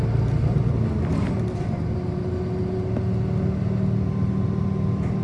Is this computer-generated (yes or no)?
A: no